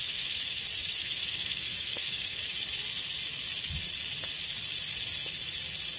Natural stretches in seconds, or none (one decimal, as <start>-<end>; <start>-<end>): 2.4-6.0